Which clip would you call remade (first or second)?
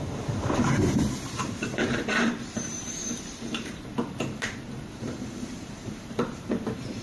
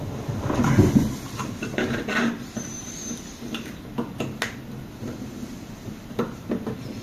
first